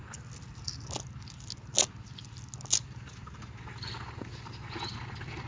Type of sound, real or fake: real